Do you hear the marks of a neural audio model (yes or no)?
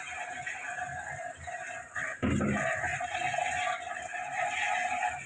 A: no